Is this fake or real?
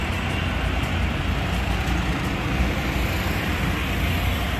real